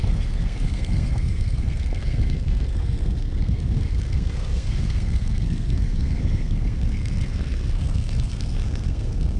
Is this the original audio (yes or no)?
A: no